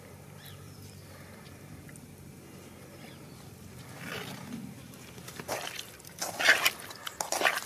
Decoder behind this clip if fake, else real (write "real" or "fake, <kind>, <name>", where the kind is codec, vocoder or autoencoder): fake, vocoder, BigVGAN v2